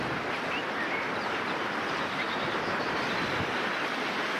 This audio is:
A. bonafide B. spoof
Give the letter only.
A